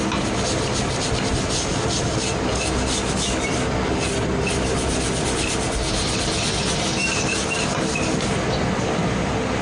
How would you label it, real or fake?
real